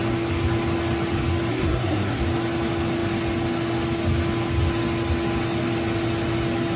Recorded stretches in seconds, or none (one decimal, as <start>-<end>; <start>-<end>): 0.0-1.5; 2.2-6.8